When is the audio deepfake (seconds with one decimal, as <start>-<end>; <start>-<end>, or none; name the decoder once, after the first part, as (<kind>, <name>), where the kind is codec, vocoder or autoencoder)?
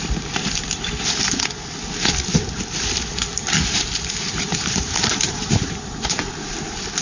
3.3-6.3 (vocoder, BigVGAN v2)